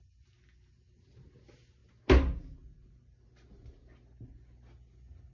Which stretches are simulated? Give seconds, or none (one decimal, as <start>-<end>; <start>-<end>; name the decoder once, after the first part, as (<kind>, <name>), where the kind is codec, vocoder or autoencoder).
none